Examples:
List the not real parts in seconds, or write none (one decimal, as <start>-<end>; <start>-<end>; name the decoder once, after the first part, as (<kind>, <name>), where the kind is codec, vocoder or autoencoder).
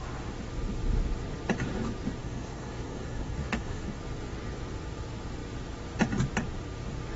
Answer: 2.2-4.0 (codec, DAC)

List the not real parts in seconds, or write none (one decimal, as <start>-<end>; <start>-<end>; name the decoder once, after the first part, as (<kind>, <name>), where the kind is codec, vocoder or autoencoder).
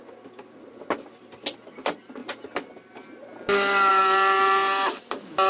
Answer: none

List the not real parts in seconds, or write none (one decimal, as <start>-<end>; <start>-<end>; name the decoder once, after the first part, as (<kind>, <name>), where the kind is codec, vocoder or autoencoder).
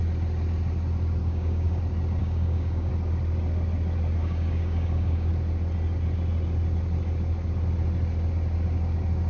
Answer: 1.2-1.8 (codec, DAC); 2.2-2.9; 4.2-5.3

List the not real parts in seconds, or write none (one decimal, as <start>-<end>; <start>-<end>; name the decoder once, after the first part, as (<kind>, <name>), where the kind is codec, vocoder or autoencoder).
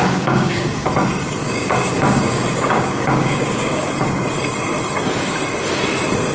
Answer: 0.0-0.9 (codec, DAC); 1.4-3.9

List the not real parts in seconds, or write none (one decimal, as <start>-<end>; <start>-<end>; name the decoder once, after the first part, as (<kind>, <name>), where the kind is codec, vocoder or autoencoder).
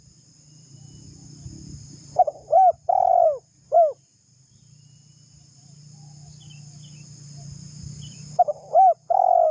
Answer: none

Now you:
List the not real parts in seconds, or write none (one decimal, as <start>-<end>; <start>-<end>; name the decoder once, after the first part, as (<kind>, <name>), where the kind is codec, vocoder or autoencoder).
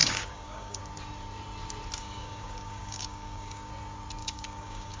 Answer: 0.0-0.8 (codec, DAC); 2.0-3.7; 4.2-5.0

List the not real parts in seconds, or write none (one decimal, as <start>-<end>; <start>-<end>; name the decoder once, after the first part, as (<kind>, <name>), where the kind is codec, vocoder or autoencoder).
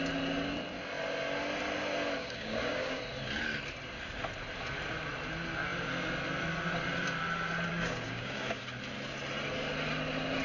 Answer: 2.2-3.0 (codec, DAC); 7.7-8.6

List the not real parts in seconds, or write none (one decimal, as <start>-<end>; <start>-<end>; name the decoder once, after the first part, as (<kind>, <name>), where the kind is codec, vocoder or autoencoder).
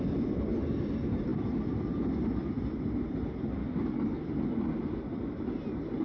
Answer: 3.6-4.2 (codec, DAC)